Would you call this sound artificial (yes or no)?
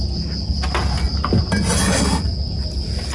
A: no